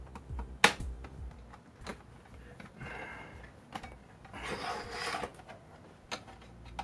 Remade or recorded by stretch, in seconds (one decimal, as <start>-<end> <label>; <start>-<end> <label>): 0.0-6.8 recorded